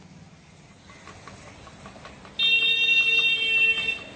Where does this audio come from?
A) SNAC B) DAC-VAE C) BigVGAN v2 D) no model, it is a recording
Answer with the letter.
D